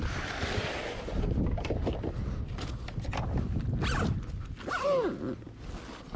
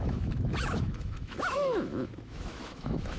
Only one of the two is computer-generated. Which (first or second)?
second